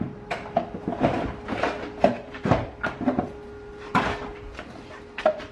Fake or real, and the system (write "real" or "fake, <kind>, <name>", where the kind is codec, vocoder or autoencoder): fake, vocoder, BigVGAN v2